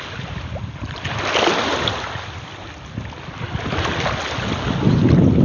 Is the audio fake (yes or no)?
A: no